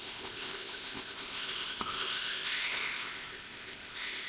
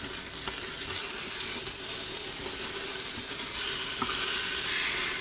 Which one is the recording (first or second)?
second